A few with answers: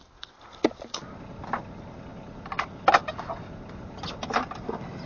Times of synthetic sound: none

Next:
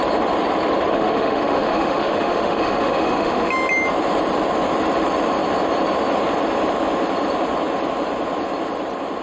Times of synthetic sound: 0.9-3.5

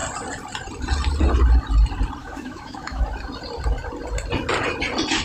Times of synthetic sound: 2.2-3.0

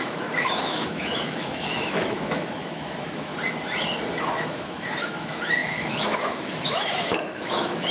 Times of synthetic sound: 0.0-3.3; 4.2-7.9